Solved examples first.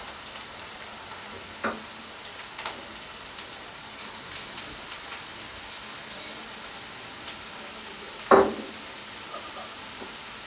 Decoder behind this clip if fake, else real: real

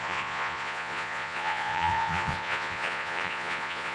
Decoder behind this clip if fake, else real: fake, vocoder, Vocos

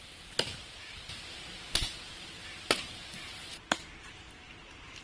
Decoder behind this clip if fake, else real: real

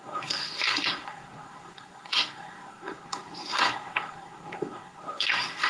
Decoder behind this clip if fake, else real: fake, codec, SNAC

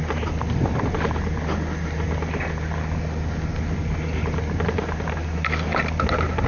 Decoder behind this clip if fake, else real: real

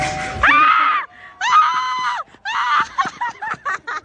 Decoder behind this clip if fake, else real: fake, vocoder, BigVGAN v2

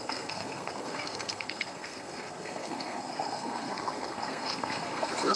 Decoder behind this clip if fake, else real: fake, codec, SNAC